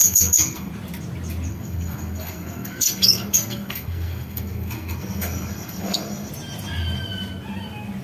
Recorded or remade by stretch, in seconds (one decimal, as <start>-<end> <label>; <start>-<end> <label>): 0.0-0.7 remade; 0.7-1.5 recorded; 1.5-6.3 remade; 6.3-8.0 recorded